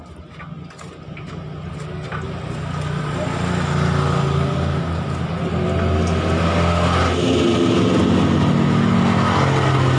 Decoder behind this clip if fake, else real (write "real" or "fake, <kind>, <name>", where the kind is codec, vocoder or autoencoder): real